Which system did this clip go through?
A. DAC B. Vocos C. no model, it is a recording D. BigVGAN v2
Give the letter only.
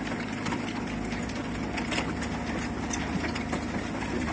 C